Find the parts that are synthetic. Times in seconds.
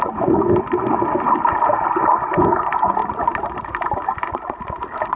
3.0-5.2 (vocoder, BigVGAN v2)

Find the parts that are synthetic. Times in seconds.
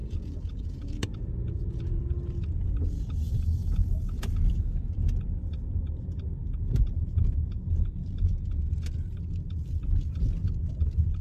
0.0-2.1 (vocoder, Vocos)